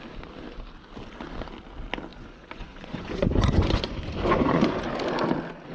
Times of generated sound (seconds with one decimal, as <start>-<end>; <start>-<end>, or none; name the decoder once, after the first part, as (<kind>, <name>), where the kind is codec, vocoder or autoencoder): 2.1-4.8 (vocoder, Vocos)